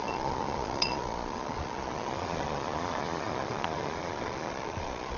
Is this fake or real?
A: fake